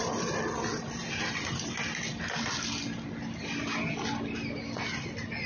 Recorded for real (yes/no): yes